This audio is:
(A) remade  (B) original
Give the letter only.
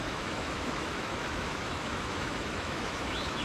A